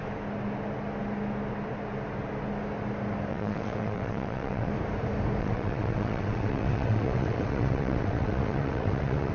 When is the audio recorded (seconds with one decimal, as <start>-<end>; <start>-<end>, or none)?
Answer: 0.0-3.3; 4.7-5.4